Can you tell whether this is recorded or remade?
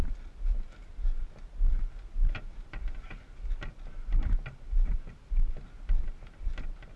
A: recorded